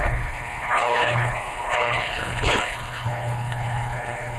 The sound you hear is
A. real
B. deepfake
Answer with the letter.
B